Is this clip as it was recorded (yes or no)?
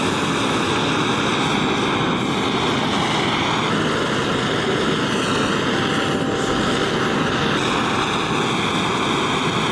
yes